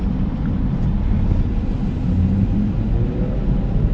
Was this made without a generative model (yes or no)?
yes